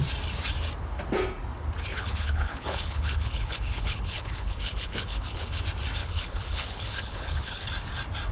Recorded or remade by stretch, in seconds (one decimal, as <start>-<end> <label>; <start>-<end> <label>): 0.0-1.9 recorded; 1.9-5.6 remade; 5.6-6.0 recorded; 6.0-7.7 remade; 7.7-8.3 recorded